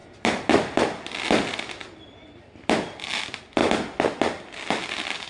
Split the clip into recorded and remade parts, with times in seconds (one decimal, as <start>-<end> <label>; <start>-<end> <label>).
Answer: 0.0-5.3 recorded